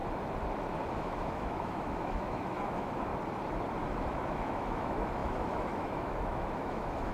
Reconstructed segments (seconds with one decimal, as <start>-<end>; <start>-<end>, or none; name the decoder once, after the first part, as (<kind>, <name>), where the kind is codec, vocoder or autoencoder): 1.0-3.1 (autoencoder, DAC-VAE); 3.9-7.1